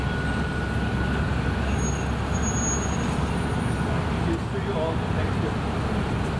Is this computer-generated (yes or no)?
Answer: no